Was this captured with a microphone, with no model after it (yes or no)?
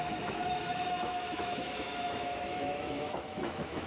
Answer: no